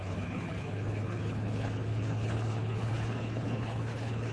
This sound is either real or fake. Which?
fake